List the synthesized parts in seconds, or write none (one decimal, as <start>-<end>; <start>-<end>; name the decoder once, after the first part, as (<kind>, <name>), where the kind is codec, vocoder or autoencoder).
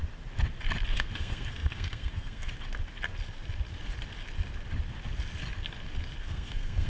0.9-2.5 (codec, SNAC); 6.2-6.9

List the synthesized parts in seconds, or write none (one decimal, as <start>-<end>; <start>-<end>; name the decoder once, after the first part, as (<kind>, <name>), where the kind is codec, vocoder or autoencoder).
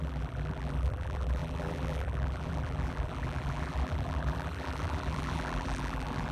0.0-6.3 (vocoder, BigVGAN v2)